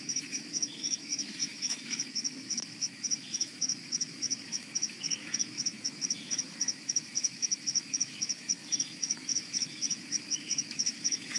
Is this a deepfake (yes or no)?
yes